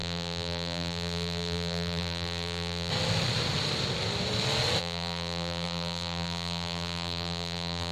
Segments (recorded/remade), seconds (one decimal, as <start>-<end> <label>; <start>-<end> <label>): 0.0-2.9 remade; 2.9-4.8 recorded; 4.8-7.9 remade